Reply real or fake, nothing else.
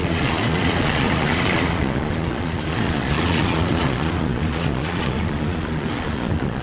fake